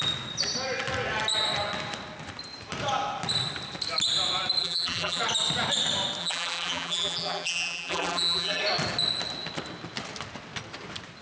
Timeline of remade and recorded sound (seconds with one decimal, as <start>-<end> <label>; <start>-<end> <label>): 0.0-4.6 recorded; 4.6-5.2 remade; 5.2-6.2 recorded; 6.2-8.6 remade; 8.6-11.2 recorded